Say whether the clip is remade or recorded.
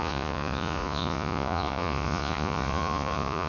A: remade